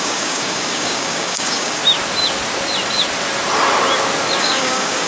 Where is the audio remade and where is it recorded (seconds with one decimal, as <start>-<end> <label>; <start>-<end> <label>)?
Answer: 0.0-1.8 remade; 1.8-4.4 recorded; 4.4-5.1 remade